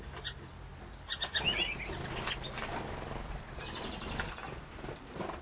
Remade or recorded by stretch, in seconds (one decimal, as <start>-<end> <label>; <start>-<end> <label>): 0.0-5.4 recorded